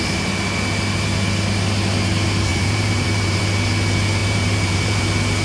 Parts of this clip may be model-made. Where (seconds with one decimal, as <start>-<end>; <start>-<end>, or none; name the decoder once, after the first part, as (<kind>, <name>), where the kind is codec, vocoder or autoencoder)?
2.5-3.4 (vocoder, BigVGAN v2); 4.2-5.0